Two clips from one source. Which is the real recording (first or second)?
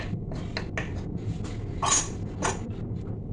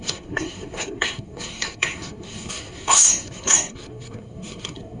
first